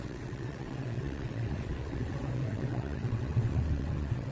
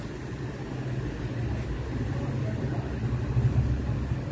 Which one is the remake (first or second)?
first